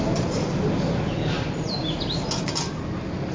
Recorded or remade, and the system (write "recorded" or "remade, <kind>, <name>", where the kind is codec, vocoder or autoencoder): recorded